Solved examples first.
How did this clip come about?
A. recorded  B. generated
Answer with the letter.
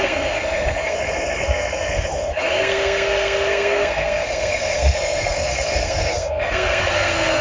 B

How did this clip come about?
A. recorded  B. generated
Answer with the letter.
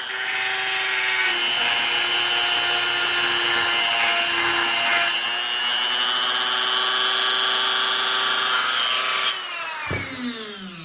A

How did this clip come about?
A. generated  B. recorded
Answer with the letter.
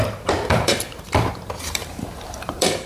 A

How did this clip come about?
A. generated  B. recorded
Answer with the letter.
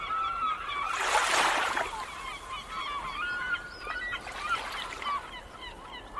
B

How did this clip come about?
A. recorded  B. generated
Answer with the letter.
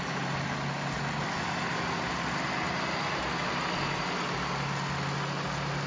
A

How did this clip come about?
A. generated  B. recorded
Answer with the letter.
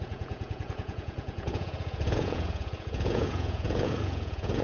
A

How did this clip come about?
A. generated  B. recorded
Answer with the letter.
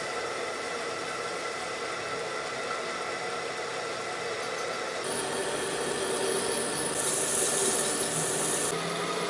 B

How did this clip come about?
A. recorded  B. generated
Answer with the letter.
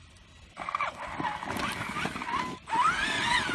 A